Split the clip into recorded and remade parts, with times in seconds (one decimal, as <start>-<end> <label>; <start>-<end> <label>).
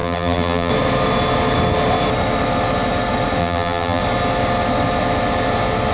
0.0-0.7 remade; 0.7-3.4 recorded; 3.4-4.0 remade; 4.0-5.9 recorded